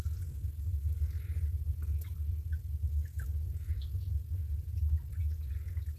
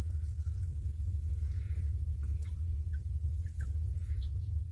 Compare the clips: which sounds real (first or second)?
first